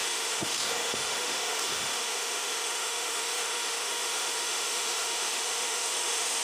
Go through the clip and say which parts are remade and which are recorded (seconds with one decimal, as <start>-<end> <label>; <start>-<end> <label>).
0.0-6.4 remade

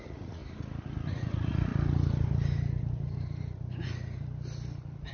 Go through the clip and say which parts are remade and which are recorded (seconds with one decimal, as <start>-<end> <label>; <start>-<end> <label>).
0.0-0.4 remade; 0.4-1.1 recorded; 1.1-1.7 remade; 1.7-5.1 recorded

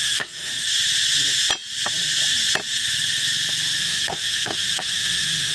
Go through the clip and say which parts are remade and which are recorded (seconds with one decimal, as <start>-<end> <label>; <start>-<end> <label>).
0.0-0.5 remade; 0.5-3.8 recorded; 3.8-5.5 remade

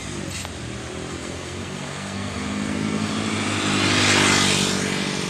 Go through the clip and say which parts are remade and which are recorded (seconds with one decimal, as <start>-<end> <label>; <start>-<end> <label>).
0.0-1.1 recorded; 1.1-3.1 remade; 3.1-5.3 recorded

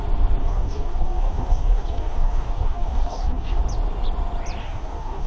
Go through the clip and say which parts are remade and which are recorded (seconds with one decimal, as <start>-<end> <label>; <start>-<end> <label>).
0.0-0.4 recorded; 0.4-3.6 remade; 3.6-4.6 recorded; 4.6-5.3 remade

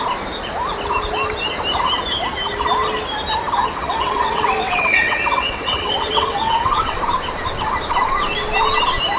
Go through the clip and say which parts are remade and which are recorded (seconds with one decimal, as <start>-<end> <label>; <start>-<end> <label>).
0.0-3.8 recorded; 3.8-7.0 remade; 7.0-9.2 recorded

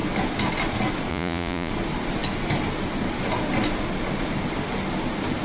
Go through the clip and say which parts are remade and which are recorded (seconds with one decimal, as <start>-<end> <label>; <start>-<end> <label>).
0.0-1.1 recorded; 1.1-1.7 remade; 1.7-5.4 recorded